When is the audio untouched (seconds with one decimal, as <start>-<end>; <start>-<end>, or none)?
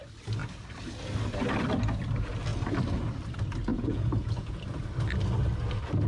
0.0-3.7; 4.6-6.1